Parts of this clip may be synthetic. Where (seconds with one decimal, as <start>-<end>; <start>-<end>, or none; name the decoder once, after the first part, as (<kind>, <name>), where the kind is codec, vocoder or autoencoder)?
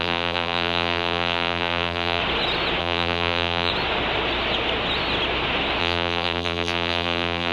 0.0-2.2 (vocoder, BigVGAN v2); 2.8-3.7; 5.8-7.5